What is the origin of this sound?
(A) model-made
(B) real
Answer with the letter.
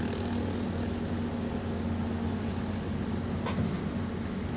B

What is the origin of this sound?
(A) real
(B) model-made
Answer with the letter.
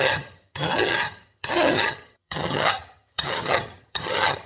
B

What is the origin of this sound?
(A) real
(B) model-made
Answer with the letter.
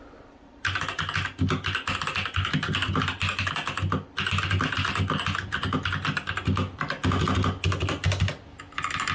A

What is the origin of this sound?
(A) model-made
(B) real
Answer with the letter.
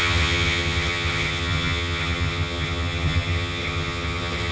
A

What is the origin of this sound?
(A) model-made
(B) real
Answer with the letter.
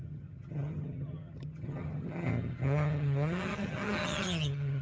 A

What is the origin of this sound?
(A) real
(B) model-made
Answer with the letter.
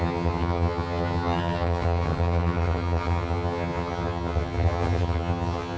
B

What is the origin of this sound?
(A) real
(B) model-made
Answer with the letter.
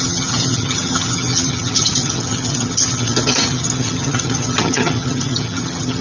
B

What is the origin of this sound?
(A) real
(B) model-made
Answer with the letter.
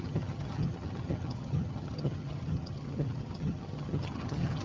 B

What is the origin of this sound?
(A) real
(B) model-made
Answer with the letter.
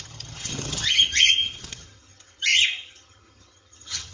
B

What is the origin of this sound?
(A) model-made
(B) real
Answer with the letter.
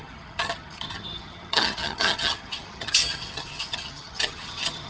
A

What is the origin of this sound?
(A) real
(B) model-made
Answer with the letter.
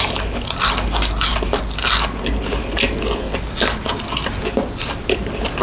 A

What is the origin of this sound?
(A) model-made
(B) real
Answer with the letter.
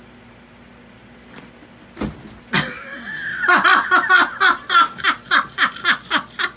B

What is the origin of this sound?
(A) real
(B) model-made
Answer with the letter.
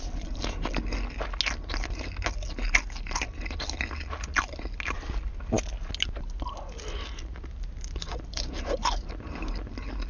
A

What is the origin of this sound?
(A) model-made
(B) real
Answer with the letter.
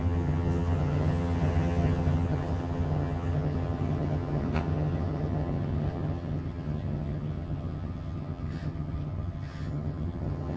A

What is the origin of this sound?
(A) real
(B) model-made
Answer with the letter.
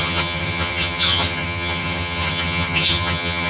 B